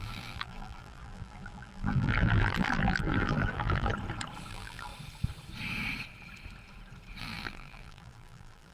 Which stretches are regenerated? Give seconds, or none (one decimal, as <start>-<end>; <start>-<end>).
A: 0.0-3.9; 4.5-4.9; 7.2-8.7